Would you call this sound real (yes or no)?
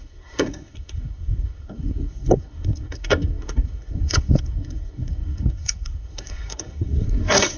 no